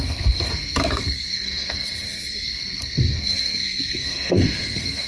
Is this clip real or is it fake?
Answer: fake